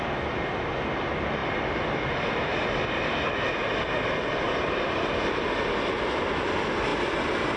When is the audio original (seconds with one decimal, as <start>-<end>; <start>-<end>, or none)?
0.0-1.4; 3.2-6.9